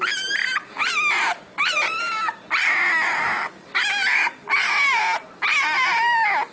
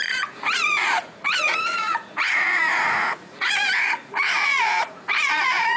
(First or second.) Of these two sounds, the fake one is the second